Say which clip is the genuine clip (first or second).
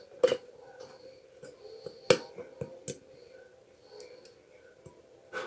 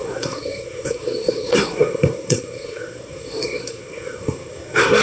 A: first